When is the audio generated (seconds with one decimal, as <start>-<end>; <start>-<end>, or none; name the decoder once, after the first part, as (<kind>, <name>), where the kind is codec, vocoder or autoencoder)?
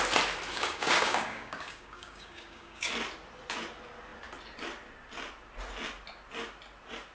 0.5-2.9 (codec, DAC)